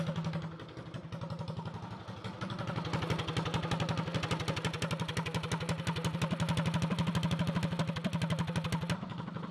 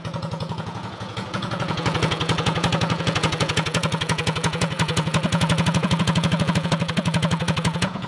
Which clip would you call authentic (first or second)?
first